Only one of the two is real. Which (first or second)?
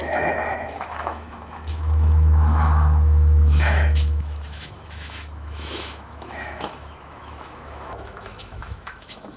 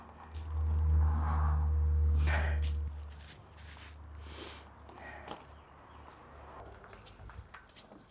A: second